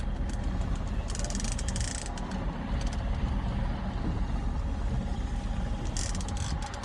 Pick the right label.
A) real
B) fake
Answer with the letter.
A